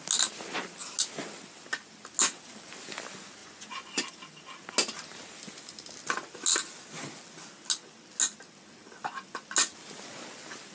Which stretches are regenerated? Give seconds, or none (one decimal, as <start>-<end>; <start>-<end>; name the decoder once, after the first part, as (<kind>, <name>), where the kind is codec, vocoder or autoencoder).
3.4-4.1 (vocoder, Vocos)